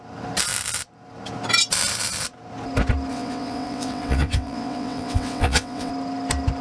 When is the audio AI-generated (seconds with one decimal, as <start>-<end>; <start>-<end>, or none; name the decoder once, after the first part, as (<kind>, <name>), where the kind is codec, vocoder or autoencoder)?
3.1-5.9 (vocoder, WaveNeXt)

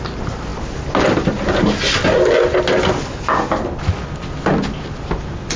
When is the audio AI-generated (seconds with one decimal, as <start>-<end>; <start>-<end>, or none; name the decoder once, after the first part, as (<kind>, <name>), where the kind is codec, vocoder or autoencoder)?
none

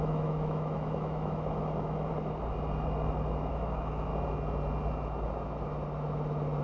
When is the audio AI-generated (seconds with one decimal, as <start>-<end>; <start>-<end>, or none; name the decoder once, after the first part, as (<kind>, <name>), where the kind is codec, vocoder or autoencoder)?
0.0-2.1 (autoencoder, DAC-VAE); 3.5-4.1

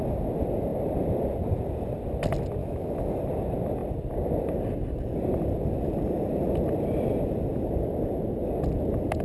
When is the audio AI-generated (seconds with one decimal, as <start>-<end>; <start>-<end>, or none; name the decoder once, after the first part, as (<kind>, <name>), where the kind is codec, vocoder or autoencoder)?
2.6-3.2 (autoencoder, DAC-VAE)

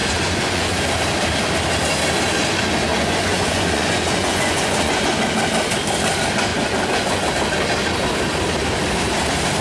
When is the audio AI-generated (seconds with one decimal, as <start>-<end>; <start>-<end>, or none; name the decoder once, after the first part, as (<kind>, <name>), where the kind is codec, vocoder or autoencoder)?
0.0-0.8 (vocoder, Vocos); 2.9-5.2; 6.5-7.3